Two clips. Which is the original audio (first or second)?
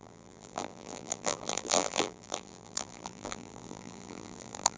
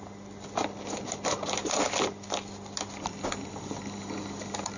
second